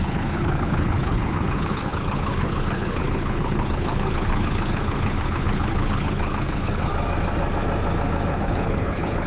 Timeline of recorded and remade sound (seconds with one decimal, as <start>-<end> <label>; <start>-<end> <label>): 0.0-6.9 remade; 6.9-8.3 recorded; 8.3-9.3 remade